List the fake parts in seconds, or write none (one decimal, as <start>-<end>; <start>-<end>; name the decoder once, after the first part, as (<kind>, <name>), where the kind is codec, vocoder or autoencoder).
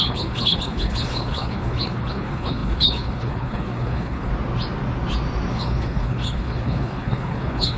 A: 0.0-4.3 (codec, HILCodec); 5.5-7.8